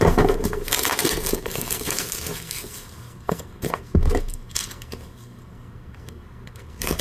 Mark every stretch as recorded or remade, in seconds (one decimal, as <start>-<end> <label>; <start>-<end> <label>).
0.0-7.0 remade